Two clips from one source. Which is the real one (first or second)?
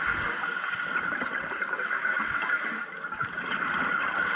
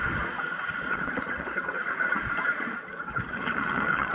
first